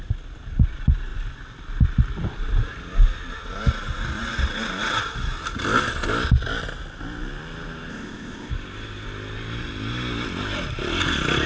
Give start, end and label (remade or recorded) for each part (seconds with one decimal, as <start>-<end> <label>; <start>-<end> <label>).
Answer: 0.0-7.9 recorded; 7.9-8.5 remade; 8.5-11.5 recorded